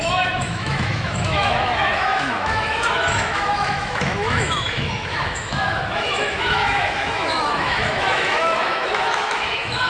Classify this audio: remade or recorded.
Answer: remade